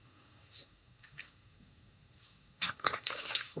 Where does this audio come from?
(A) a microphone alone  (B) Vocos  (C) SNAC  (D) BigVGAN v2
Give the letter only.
C